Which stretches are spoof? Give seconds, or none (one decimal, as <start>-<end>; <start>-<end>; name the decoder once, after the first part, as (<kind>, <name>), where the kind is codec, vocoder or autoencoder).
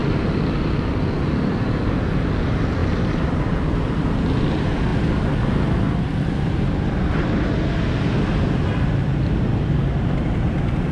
none